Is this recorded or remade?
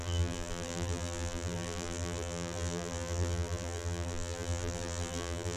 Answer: remade